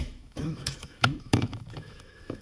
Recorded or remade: remade